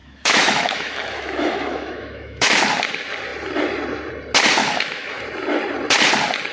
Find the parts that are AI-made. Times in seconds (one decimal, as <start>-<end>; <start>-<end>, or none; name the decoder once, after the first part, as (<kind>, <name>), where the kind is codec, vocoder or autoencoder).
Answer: 0.0-2.6 (autoencoder, DAC-VAE); 4.6-5.2